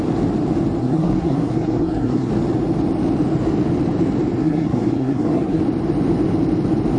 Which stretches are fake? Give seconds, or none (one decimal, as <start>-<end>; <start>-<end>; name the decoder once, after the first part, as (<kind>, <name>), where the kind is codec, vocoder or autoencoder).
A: 0.8-2.3 (codec, SNAC); 4.4-5.6